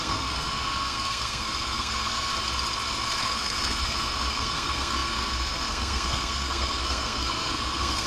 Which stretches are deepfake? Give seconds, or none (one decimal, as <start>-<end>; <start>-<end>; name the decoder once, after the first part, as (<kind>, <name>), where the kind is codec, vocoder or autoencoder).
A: 0.0-2.3 (codec, SNAC); 3.2-8.1

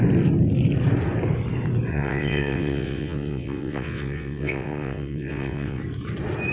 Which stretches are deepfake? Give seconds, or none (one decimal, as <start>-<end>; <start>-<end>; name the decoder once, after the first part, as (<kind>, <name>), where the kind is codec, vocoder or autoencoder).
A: 1.9-5.8 (vocoder, WaveNeXt)

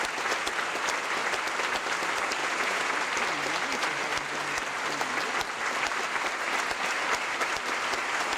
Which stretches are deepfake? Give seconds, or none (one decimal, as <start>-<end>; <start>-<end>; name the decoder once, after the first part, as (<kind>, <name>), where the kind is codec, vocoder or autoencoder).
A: 2.4-2.9 (vocoder, Vocos)

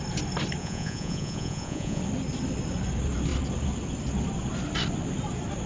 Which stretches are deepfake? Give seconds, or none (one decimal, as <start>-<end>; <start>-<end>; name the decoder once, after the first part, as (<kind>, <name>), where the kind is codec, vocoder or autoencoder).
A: 0.6-2.0 (vocoder, Vocos)

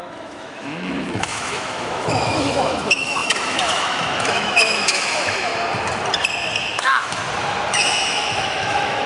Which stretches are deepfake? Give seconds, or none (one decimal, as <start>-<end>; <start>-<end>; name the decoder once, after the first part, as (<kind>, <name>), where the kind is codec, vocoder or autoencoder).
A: 0.0-5.5 (autoencoder, DAC-VAE); 6.6-7.2; 7.7-9.1

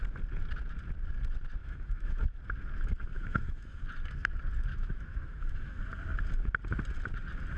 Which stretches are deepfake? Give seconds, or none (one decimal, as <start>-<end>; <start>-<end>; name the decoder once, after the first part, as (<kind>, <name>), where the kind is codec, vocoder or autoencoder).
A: 1.6-2.4 (autoencoder, DAC-VAE); 3.0-3.8; 4.7-5.8